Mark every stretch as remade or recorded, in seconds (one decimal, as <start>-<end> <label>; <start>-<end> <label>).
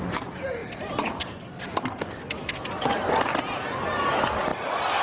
0.0-0.6 recorded; 0.6-3.4 remade; 3.4-5.0 recorded